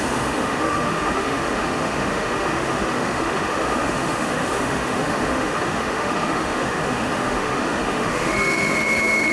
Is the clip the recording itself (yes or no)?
no